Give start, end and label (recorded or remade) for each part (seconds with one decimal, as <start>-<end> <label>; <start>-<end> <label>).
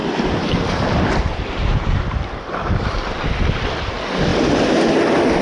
0.0-3.2 remade; 3.2-5.4 recorded